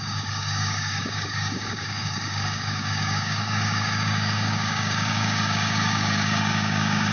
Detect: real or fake fake